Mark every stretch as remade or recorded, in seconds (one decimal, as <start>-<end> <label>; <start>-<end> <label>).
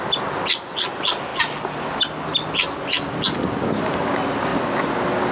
0.0-5.3 recorded